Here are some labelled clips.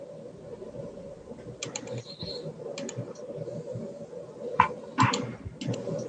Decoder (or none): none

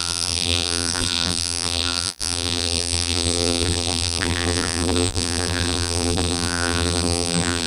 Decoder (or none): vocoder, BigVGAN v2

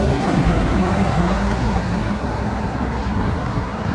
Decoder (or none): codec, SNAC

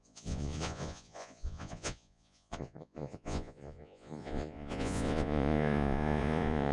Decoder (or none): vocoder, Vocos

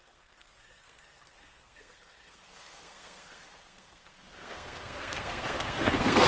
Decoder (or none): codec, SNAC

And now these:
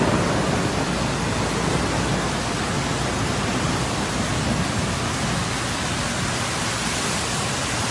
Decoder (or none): none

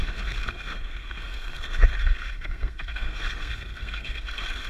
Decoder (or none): codec, SNAC